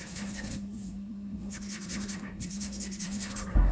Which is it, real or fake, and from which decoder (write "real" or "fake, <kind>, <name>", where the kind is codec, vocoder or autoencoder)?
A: fake, codec, SNAC